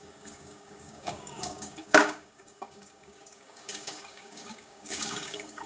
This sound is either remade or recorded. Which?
remade